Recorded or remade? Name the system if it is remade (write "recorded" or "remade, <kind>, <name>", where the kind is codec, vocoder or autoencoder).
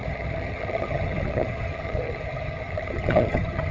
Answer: remade, vocoder, HiFi-GAN